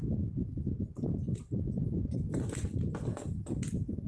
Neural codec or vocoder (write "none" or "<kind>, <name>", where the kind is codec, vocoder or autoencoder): none